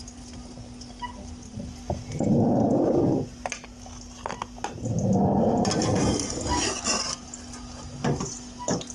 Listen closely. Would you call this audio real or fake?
real